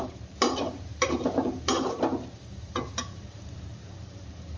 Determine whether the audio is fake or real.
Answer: fake